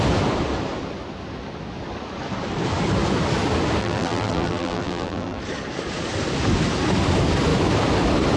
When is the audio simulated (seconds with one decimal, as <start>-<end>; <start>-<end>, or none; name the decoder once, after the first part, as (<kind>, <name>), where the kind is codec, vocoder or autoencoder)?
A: 3.8-5.4 (vocoder, BigVGAN v2)